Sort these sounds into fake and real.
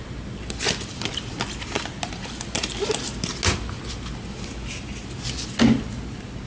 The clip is real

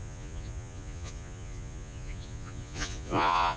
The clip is fake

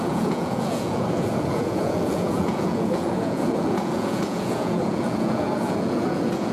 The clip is fake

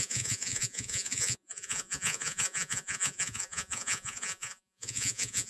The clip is fake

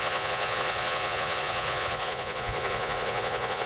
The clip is fake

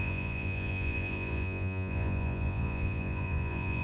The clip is fake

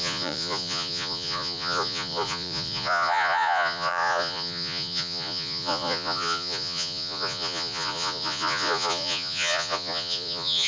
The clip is fake